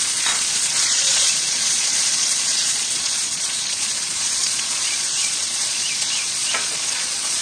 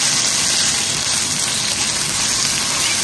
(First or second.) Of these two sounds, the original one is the second